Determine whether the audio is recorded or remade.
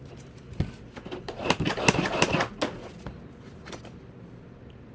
recorded